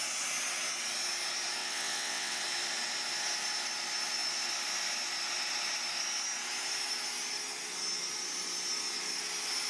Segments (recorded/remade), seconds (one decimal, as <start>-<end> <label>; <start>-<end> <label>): 0.0-1.6 recorded; 1.6-2.4 remade; 2.4-9.7 recorded